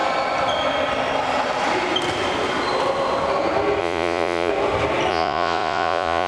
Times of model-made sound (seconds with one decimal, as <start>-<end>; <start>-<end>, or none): 3.8-4.5; 5.1-6.3